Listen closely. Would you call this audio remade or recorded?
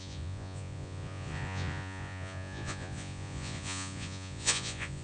remade